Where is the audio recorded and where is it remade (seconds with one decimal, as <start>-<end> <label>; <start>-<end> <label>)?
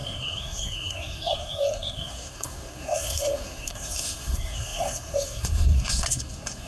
0.0-6.7 remade